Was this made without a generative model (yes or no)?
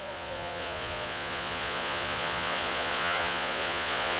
no